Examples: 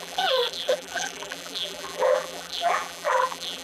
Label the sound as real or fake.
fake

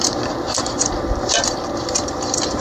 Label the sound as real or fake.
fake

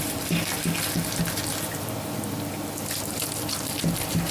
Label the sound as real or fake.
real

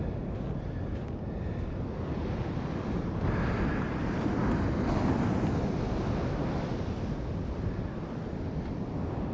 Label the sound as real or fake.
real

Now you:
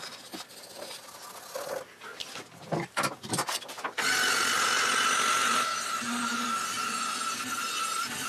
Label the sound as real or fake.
real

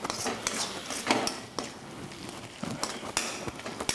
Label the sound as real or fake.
real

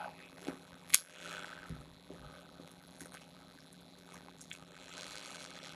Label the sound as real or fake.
fake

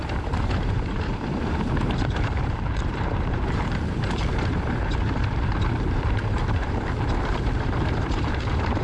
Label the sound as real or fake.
fake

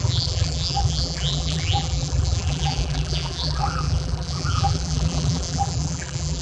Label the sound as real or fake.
fake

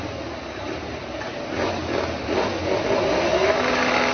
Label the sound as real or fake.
real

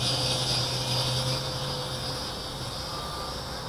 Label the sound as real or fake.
real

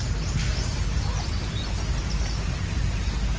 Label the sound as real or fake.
fake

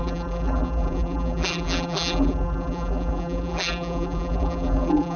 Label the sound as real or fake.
fake